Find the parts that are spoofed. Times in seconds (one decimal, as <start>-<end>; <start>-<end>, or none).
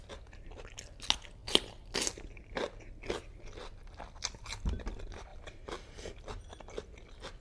5.3-6.3